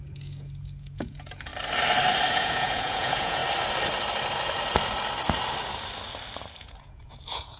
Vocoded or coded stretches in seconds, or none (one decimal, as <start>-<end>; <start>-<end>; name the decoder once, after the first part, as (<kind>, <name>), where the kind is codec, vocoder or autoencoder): 0.0-1.5 (vocoder, Vocos); 2.3-3.4; 6.6-7.6